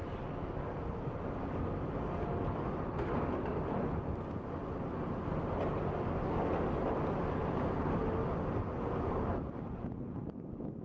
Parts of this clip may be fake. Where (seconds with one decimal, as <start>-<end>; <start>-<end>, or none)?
none